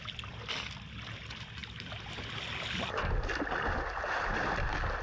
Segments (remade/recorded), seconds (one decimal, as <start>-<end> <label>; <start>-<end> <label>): 0.0-5.0 recorded